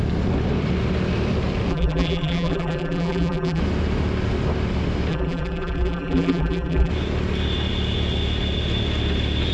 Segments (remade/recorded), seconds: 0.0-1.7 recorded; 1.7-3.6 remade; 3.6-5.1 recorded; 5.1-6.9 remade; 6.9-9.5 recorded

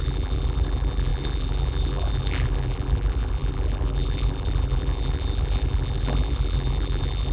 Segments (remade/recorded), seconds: 0.0-7.3 remade

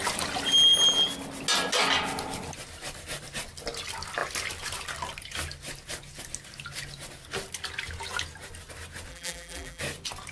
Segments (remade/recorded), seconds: 0.0-9.1 recorded; 9.1-9.8 remade; 9.8-10.3 recorded

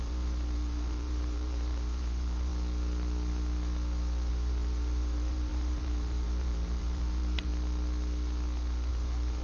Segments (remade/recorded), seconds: 0.0-2.5 remade; 2.5-4.3 recorded; 4.3-7.5 remade; 7.5-8.9 recorded; 8.9-9.4 remade

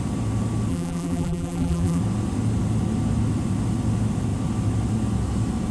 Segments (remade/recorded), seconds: 0.0-0.7 recorded; 0.7-2.0 remade; 2.0-5.7 recorded

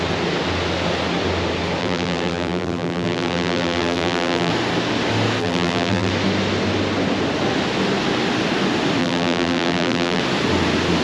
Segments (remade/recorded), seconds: 0.0-1.8 recorded; 1.8-4.5 remade; 4.5-5.4 recorded; 5.4-6.1 remade; 6.1-9.0 recorded; 9.0-10.2 remade; 10.2-11.0 recorded

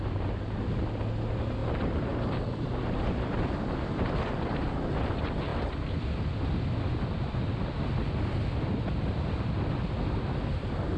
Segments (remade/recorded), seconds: 0.0-1.6 recorded; 1.6-4.5 remade; 4.5-5.5 recorded; 5.5-7.1 remade; 7.1-11.0 recorded